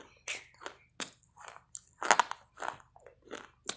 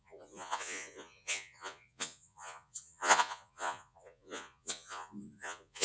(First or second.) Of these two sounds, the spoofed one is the second